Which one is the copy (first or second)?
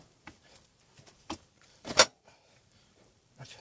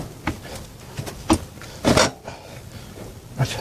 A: first